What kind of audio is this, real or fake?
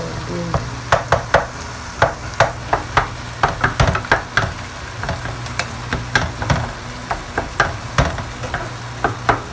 real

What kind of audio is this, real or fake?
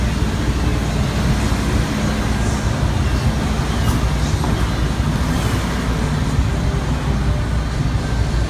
real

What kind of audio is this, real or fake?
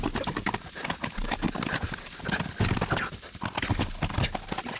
real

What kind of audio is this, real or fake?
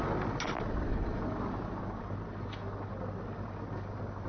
real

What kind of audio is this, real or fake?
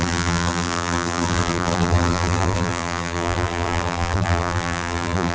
fake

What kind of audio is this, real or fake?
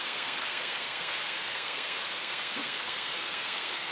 fake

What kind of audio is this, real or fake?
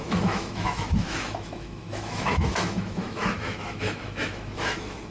fake